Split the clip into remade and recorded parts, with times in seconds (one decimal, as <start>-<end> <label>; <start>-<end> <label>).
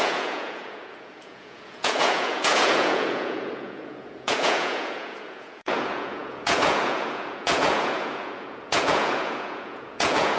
0.0-10.4 remade